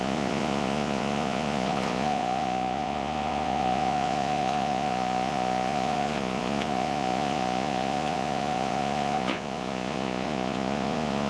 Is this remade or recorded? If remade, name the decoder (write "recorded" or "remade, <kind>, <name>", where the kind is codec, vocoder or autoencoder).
remade, vocoder, Vocos